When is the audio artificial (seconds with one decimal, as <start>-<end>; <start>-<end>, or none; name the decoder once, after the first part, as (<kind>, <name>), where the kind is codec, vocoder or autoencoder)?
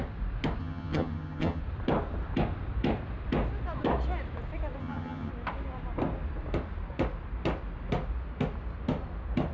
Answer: 0.6-1.6 (vocoder, HiFi-GAN); 4.8-5.3